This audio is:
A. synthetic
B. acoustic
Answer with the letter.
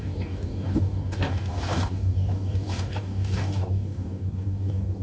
A